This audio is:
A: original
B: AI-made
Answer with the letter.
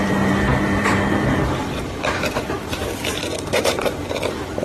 B